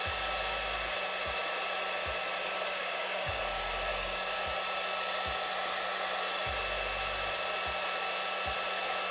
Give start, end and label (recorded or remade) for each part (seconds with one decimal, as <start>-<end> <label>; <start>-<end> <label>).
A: 0.0-2.8 recorded; 2.8-3.4 remade; 3.4-3.9 recorded; 3.9-4.4 remade; 4.4-9.1 recorded